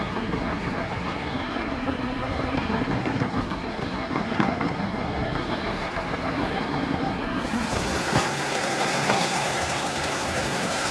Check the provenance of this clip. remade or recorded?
remade